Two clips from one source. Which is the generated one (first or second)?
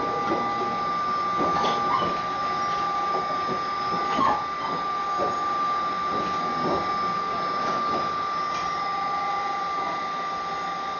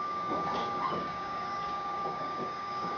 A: second